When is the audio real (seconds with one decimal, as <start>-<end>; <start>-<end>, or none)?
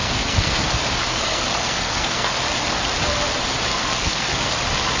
0.7-1.1; 2.3-3.8; 4.5-5.0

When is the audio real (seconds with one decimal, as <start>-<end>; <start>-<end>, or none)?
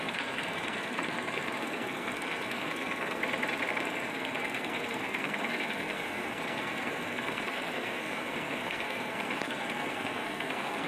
3.2-3.7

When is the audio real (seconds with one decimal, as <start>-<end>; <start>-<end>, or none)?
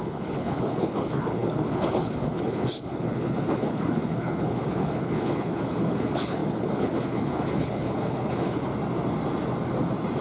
8.7-10.2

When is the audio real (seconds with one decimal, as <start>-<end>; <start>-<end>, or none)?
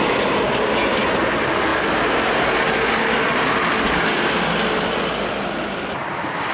0.0-6.5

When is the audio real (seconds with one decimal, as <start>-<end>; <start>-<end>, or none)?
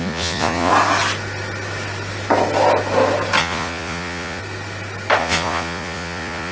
0.7-3.4; 4.4-5.2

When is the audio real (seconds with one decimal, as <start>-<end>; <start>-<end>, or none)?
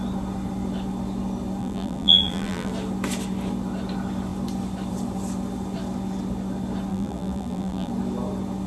0.0-1.6; 2.7-6.9; 7.9-8.7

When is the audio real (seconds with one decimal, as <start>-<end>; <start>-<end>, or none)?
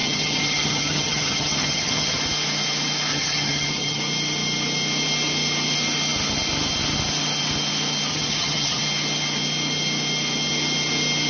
2.2-3.1; 4.0-8.1; 8.8-11.3